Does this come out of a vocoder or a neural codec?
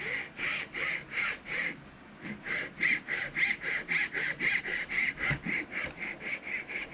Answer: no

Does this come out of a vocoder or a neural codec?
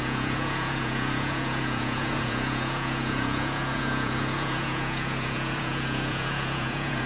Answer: yes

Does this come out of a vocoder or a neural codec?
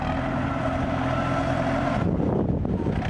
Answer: no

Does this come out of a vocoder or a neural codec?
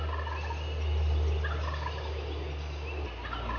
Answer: no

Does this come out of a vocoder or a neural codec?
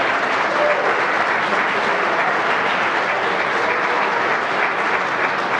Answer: no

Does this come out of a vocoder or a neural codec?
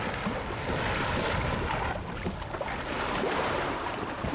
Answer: no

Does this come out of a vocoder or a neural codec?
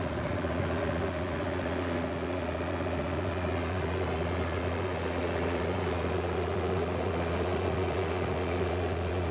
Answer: yes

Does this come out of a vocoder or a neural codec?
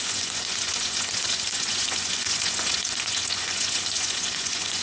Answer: yes